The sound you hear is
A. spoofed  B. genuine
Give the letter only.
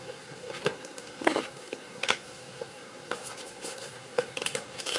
A